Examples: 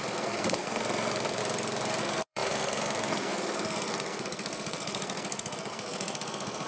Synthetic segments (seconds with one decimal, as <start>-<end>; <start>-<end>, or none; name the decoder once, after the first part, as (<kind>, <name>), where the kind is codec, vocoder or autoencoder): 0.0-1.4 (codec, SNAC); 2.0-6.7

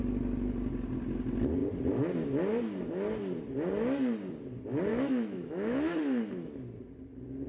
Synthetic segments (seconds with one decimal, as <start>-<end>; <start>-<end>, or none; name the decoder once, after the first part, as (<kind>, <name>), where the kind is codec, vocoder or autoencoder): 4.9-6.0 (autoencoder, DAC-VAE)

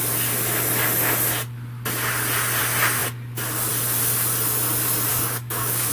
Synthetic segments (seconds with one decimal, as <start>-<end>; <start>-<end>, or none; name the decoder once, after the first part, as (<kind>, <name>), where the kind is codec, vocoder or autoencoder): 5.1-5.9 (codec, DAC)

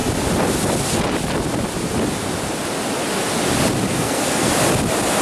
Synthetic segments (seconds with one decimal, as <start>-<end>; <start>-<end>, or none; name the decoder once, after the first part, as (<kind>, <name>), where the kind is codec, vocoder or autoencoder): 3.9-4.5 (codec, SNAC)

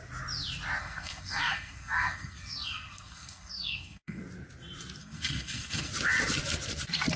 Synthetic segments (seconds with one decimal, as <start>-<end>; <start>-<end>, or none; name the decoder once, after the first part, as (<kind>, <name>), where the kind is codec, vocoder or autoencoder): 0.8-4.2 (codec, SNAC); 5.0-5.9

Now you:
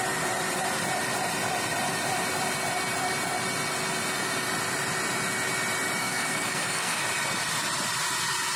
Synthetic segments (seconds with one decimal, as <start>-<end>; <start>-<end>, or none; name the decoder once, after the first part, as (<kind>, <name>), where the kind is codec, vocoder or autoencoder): 6.0-7.0 (codec, SNAC)

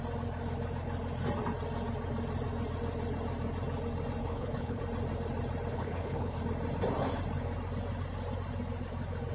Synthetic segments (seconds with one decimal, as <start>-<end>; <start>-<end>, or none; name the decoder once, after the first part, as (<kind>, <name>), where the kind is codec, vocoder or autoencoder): 4.2-4.8 (codec, HILCodec); 5.7-6.4

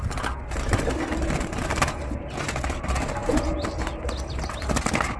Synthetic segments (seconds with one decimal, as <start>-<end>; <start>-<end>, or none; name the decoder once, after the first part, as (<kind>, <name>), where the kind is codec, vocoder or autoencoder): none